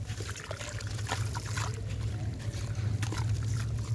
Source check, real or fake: real